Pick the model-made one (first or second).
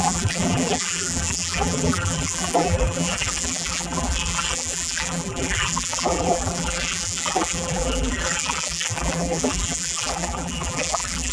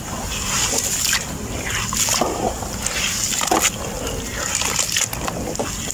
first